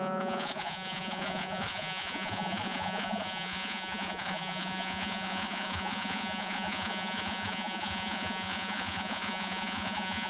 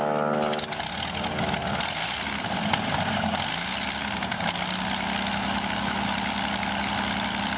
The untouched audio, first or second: second